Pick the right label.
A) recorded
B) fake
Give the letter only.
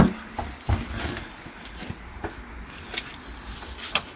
A